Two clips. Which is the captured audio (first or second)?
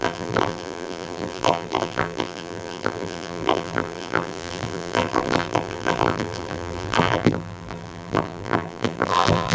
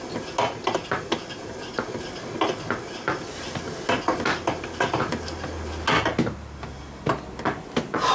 second